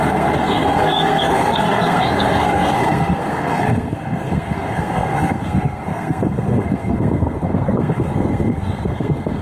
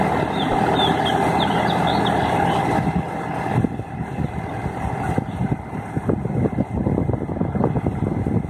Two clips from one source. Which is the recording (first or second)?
second